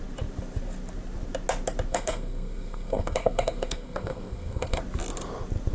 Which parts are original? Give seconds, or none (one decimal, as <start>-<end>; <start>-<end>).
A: 0.0-1.9; 4.8-5.7